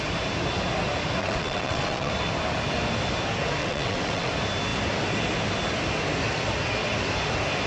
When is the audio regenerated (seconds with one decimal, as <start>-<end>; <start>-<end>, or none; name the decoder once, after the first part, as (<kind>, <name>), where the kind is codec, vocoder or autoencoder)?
1.2-2.1 (vocoder, WaveNeXt); 3.6-4.3

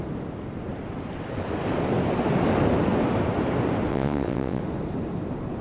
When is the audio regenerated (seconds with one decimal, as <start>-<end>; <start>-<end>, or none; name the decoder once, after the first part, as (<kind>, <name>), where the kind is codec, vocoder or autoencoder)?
3.9-4.6 (vocoder, WaveNeXt)